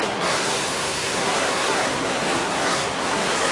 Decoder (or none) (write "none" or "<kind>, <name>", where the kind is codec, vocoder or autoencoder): codec, SNAC